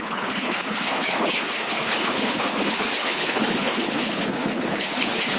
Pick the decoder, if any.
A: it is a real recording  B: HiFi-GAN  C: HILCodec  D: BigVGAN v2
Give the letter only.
C